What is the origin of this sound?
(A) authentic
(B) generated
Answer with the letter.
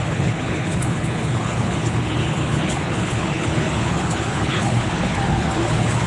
B